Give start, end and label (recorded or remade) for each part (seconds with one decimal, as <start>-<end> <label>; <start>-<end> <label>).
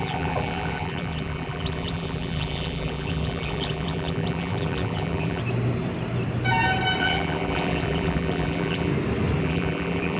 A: 0.0-5.4 remade; 5.4-7.0 recorded; 7.0-8.9 remade; 8.9-9.4 recorded; 9.4-10.2 remade